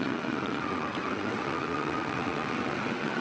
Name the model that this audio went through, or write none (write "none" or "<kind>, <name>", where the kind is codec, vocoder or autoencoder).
vocoder, WaveNeXt